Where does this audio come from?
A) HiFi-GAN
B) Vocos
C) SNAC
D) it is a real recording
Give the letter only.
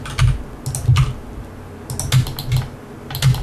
D